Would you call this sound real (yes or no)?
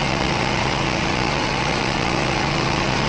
no